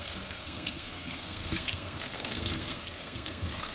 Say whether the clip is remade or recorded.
remade